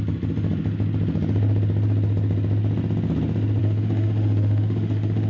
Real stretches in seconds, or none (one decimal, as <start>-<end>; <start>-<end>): 0.0-3.6